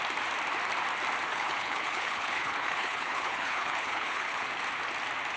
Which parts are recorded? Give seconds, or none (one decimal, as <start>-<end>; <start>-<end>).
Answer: 0.0-1.3; 4.5-5.4